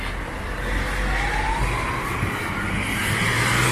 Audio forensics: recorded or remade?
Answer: recorded